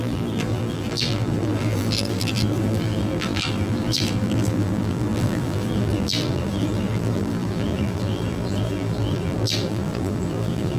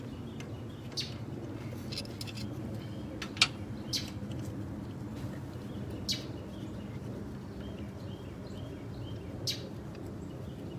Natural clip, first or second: second